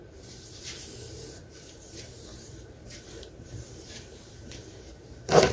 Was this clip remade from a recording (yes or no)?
yes